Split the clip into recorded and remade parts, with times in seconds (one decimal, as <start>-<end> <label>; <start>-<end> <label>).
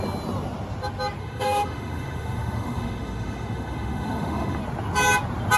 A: 0.0-1.2 recorded; 1.2-4.6 remade; 4.6-5.6 recorded